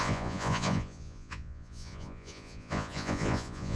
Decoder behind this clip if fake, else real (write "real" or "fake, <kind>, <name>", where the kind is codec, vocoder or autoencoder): fake, vocoder, Vocos